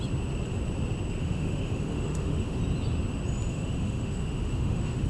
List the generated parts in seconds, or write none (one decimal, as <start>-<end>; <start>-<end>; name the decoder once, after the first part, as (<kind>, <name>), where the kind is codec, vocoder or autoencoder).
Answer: 1.2-2.6 (autoencoder, DAC-VAE); 3.5-5.1